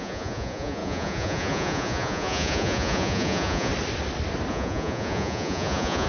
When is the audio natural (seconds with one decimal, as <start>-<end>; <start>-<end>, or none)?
3.7-4.5